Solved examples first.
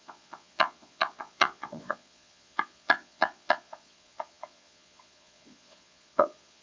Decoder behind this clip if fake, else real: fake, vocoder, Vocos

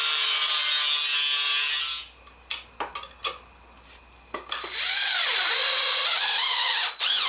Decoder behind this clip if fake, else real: real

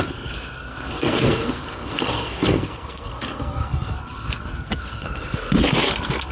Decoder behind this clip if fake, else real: fake, codec, SNAC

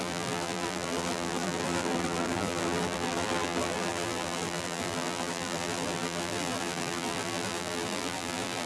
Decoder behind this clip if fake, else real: fake, vocoder, BigVGAN v2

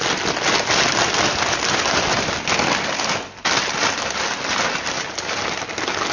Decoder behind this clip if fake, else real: real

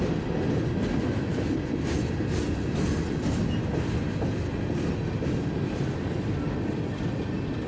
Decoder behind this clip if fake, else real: real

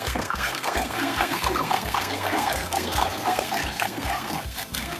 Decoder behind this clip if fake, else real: fake, codec, SNAC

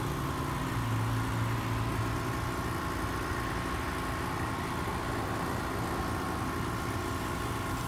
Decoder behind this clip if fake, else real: real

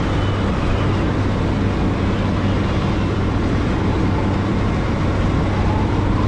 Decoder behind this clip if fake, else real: real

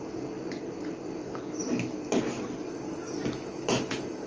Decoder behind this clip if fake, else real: real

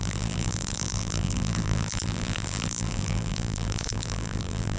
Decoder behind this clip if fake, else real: fake, vocoder, BigVGAN v2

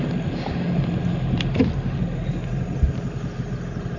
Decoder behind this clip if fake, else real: real